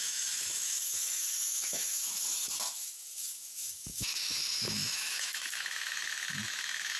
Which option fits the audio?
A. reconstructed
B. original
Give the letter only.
A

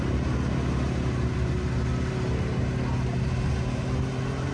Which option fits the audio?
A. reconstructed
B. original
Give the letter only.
B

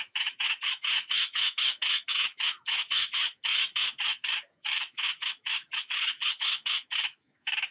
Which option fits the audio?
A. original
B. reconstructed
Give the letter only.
B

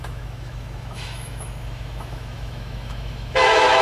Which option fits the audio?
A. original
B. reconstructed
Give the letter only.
B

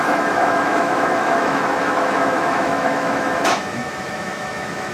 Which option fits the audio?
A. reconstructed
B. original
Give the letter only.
A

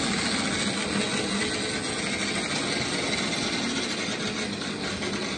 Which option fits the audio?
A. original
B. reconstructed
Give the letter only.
A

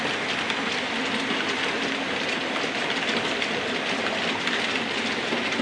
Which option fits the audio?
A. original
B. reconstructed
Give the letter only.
A